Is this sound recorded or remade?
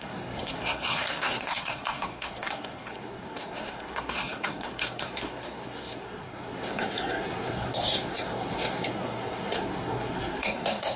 remade